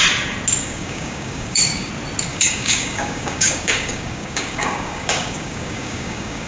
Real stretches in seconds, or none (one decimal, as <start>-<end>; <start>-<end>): 0.0-0.6; 1.9-2.3